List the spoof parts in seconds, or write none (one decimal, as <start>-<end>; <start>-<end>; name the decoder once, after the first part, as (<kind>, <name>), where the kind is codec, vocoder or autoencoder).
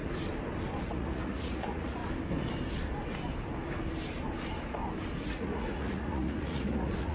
0.8-2.0 (vocoder, Vocos); 5.2-7.1